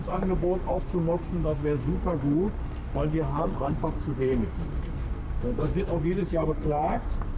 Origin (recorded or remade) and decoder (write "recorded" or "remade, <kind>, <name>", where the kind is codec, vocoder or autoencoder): remade, codec, SNAC